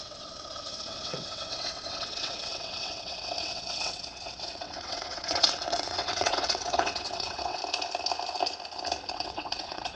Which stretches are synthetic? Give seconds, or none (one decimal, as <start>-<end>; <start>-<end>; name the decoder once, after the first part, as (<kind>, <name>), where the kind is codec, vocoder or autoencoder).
0.0-7.6 (vocoder, WaveNeXt); 9.1-10.0